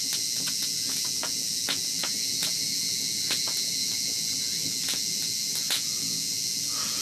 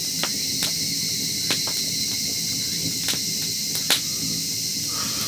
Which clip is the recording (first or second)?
second